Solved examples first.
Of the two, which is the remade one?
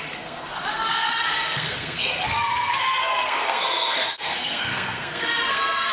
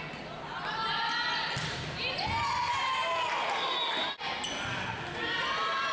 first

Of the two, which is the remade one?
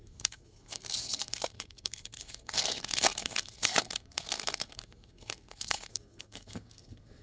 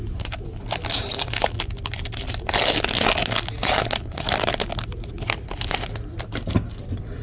first